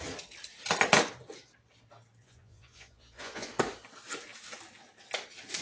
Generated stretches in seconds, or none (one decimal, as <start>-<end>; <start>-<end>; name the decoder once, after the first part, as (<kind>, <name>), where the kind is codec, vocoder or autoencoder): 2.2-3.5 (vocoder, Vocos)